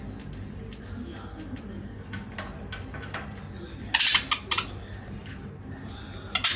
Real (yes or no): yes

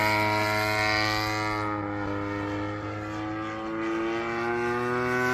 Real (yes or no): yes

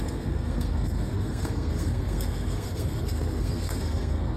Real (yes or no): no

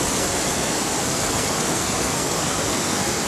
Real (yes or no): no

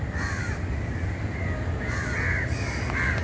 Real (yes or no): yes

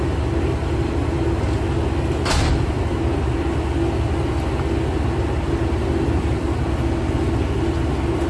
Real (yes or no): yes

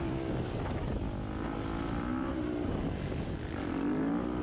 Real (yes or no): yes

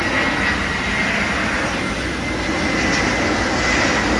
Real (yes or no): yes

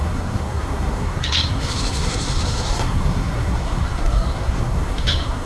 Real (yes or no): no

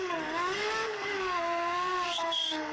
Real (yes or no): no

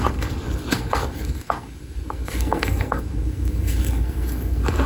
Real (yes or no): no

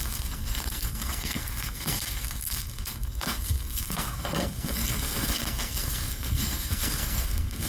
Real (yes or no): no